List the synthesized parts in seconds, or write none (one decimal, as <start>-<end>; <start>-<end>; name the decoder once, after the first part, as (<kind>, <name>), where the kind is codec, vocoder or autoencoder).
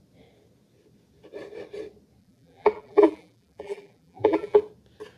2.2-4.6 (vocoder, BigVGAN v2)